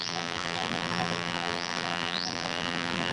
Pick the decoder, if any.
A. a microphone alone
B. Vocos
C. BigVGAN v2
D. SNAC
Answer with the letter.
C